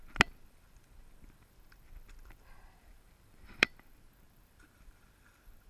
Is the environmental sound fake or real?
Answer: fake